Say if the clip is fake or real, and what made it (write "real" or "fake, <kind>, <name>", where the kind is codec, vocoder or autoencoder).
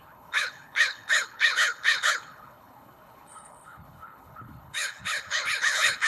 fake, codec, HILCodec